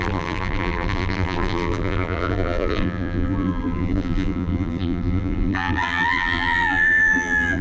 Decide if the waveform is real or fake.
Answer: fake